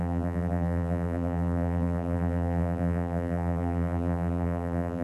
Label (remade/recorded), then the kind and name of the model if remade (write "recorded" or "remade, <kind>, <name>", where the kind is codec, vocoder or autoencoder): remade, vocoder, BigVGAN v2